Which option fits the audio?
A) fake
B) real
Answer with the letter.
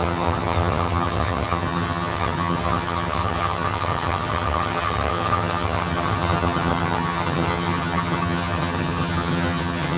A